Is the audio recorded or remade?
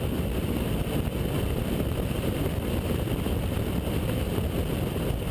remade